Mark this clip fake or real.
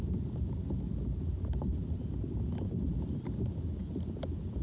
real